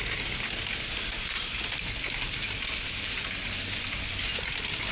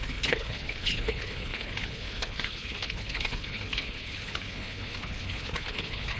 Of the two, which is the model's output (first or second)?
second